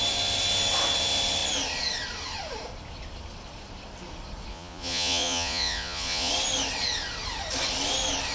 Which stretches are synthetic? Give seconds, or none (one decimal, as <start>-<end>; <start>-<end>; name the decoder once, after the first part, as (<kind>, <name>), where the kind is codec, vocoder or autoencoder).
4.5-6.3 (vocoder, Vocos)